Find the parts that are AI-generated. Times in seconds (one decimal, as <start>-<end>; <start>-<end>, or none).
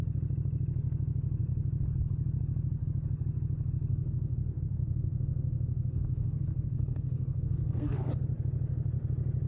3.9-8.1